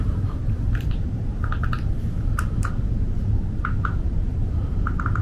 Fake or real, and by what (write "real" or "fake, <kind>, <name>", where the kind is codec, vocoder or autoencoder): fake, vocoder, BigVGAN v2